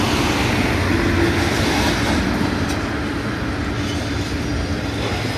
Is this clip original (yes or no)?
yes